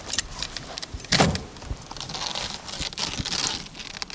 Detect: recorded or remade recorded